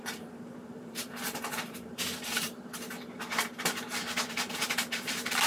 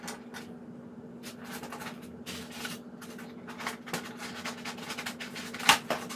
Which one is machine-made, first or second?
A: first